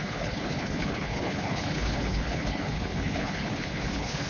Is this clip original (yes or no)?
no